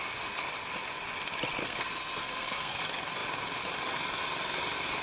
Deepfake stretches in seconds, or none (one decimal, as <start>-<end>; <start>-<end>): 1.6-2.8